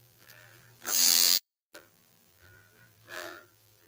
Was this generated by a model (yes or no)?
yes